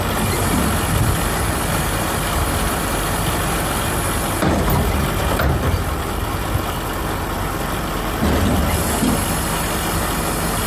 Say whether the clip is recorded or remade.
recorded